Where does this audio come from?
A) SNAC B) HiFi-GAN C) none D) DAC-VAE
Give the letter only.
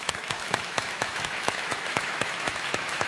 D